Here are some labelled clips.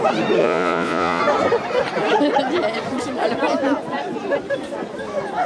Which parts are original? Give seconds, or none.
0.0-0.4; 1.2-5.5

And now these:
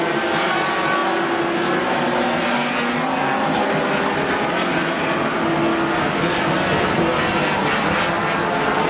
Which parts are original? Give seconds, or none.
0.0-8.9

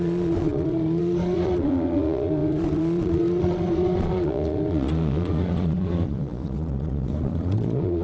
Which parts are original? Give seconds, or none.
none

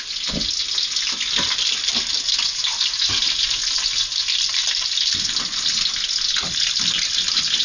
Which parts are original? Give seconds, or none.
0.0-7.6

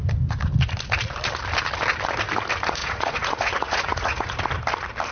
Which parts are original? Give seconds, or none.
0.0-2.8; 4.4-5.1